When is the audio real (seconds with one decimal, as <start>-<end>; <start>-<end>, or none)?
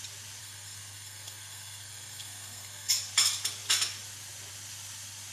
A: 0.0-0.4; 2.9-5.3